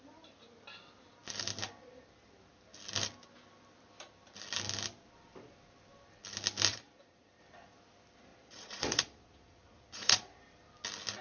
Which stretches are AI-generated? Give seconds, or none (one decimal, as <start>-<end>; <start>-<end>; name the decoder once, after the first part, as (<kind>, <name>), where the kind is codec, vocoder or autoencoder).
6.7-7.4 (vocoder, Vocos); 8.3-10.4